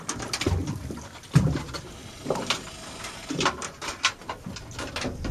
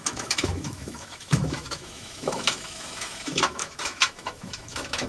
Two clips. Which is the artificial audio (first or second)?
second